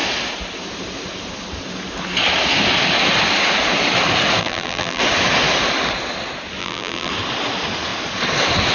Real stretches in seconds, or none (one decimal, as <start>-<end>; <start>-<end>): 0.0-4.4; 5.0-6.6; 7.1-8.7